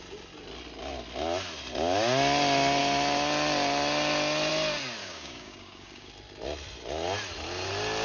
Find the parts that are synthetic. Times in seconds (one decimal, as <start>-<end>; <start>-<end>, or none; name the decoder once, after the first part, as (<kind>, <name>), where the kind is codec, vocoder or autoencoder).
5.0-6.1 (codec, DAC)